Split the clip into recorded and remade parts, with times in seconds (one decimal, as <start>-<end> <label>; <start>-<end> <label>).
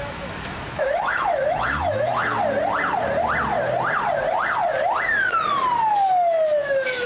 0.0-2.3 remade; 2.3-6.6 recorded; 6.6-7.1 remade